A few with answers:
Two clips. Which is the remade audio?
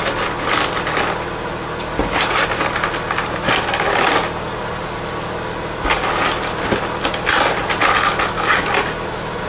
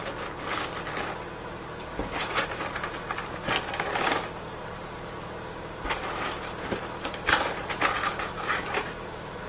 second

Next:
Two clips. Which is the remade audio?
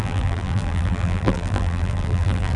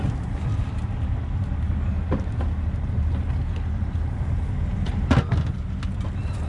first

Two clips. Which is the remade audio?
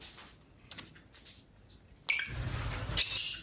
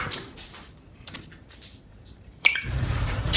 second